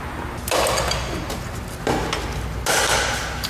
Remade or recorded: recorded